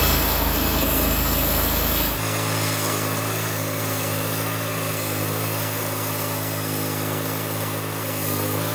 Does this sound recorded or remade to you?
remade